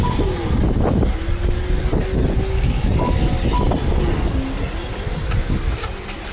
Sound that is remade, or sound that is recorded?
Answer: recorded